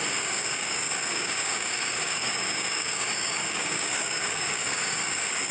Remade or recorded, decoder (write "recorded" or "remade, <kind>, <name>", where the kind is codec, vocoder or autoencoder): remade, codec, DAC